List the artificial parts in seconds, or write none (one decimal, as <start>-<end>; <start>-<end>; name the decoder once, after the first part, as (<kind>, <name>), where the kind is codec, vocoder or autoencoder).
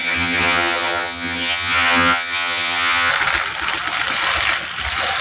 0.0-3.1 (vocoder, HiFi-GAN)